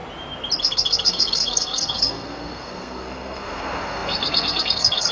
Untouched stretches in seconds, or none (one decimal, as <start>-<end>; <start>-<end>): 0.0-0.6